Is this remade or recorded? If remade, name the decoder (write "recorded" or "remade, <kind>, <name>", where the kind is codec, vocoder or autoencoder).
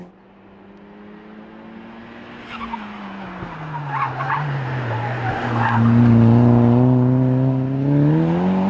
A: recorded